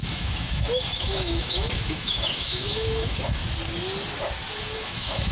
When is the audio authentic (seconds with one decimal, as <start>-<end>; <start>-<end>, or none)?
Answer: 3.4-4.6